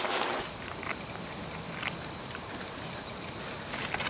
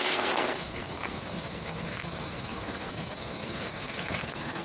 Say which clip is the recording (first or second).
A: first